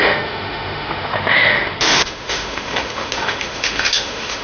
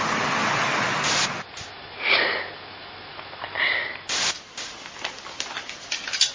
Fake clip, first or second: first